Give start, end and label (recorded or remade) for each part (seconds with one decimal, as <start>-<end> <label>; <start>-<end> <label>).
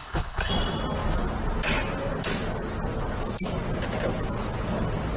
0.0-0.5 remade; 0.5-5.2 recorded